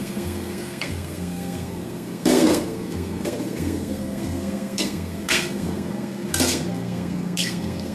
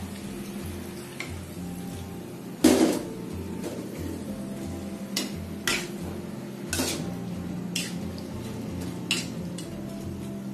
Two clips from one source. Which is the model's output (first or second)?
first